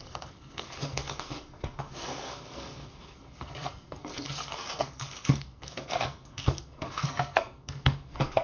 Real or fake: fake